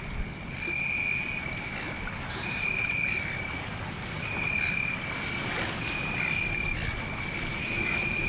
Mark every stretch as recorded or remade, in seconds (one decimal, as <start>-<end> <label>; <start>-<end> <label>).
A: 0.0-7.5 recorded; 7.5-8.3 remade